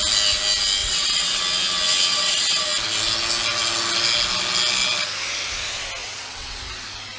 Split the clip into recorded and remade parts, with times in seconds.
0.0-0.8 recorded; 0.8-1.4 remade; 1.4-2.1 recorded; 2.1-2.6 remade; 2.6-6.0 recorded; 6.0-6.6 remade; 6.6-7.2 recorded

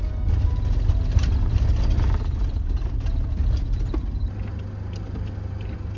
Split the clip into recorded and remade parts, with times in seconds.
0.0-6.0 recorded

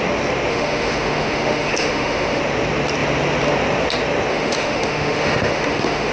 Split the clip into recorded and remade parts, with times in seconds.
0.0-0.5 recorded; 0.5-2.4 remade; 2.4-4.3 recorded; 4.3-6.1 remade

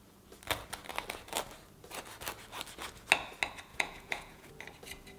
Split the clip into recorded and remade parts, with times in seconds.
0.0-3.7 recorded; 3.7-4.5 remade; 4.5-5.2 recorded

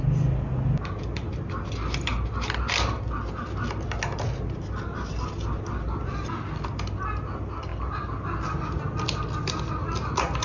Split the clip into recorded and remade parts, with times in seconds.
0.0-10.4 recorded

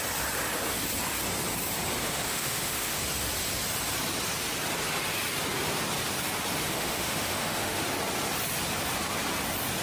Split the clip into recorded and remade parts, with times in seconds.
0.0-2.0 recorded; 2.0-3.0 remade; 3.0-6.7 recorded; 6.7-7.8 remade; 7.8-9.8 recorded

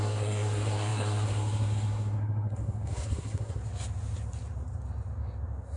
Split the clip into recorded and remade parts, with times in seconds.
0.0-3.6 remade; 3.6-5.8 recorded